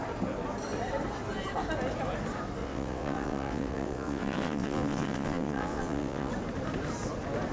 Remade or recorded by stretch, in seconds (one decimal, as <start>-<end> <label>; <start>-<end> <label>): 0.0-2.6 recorded; 2.6-6.3 remade; 6.3-7.5 recorded